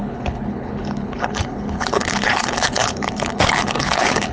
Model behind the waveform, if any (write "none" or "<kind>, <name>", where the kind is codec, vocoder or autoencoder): codec, HILCodec